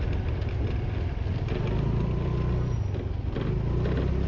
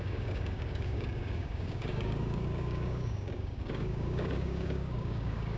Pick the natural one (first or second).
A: first